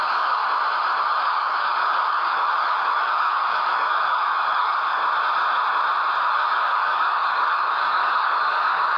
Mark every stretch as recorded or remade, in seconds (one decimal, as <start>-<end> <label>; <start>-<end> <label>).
0.0-0.4 remade; 0.4-1.0 recorded; 1.0-5.0 remade; 5.0-6.2 recorded; 6.2-9.0 remade